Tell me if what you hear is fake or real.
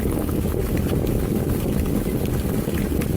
real